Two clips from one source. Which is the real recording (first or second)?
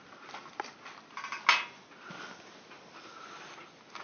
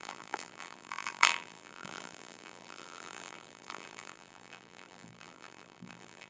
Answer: first